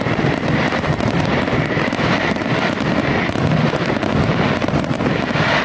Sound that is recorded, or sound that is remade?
remade